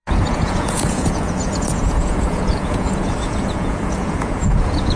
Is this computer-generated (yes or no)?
yes